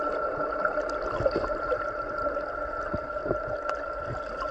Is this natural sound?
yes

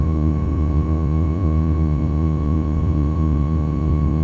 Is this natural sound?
no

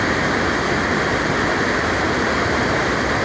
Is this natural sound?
yes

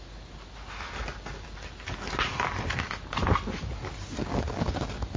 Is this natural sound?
yes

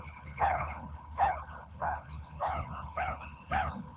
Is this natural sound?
no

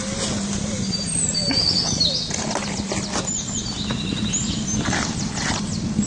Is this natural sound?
yes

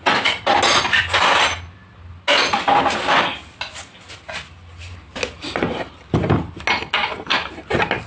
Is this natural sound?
yes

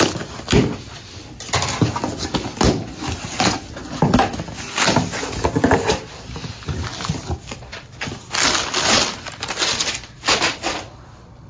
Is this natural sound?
yes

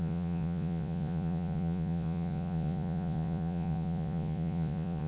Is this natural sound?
no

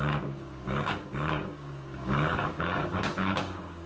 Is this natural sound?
no